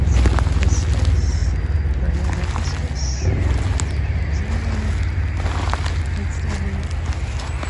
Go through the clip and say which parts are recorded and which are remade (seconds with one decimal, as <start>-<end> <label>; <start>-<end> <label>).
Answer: 0.0-7.7 recorded